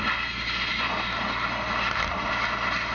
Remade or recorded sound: recorded